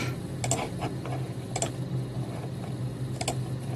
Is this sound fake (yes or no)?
no